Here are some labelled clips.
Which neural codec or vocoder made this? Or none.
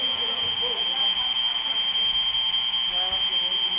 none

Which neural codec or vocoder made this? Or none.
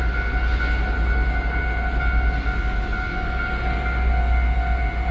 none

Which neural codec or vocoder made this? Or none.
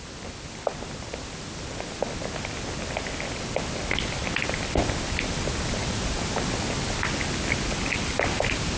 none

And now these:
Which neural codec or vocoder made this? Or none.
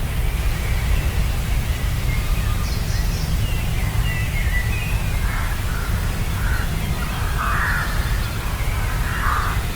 none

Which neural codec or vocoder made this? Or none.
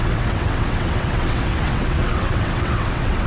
vocoder, WaveNeXt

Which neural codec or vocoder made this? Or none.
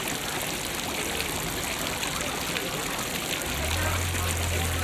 none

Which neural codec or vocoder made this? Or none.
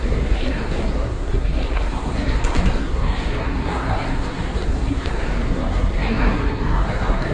codec, SNAC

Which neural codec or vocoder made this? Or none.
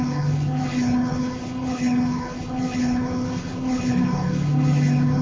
codec, HILCodec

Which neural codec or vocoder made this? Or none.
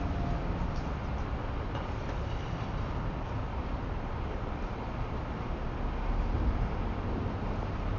none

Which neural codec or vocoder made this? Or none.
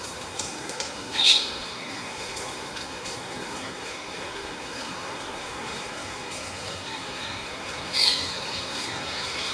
codec, SNAC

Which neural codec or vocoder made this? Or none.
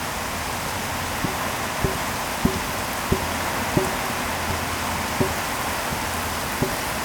none